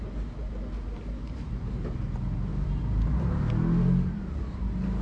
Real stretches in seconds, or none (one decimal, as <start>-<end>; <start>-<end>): 0.0-2.5; 3.1-5.0